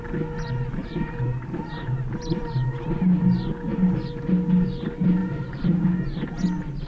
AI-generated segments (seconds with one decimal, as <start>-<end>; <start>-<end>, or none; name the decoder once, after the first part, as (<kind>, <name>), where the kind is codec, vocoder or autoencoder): 0.8-3.0 (vocoder, BigVGAN v2); 3.7-4.3; 5.2-5.8